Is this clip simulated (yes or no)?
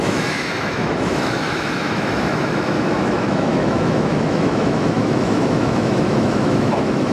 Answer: yes